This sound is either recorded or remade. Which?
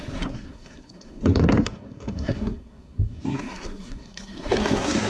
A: remade